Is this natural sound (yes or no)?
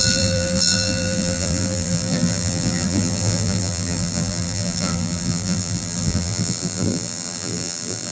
no